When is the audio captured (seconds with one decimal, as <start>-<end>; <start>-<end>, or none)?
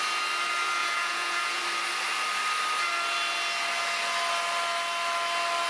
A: 0.0-0.8; 1.6-5.7